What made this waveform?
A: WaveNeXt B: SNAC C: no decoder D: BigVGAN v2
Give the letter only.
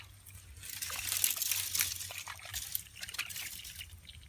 C